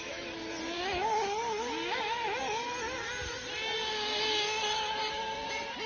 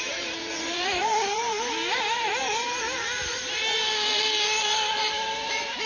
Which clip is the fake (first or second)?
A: second